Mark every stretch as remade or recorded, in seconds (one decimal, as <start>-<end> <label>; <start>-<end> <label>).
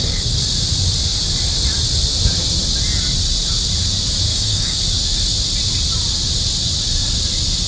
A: 0.0-4.3 recorded; 4.3-4.8 remade; 4.8-7.7 recorded